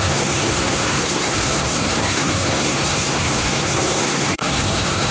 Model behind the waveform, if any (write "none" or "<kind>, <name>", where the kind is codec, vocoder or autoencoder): codec, SNAC